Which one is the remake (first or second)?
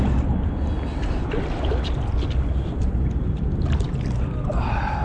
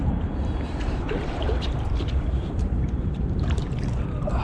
second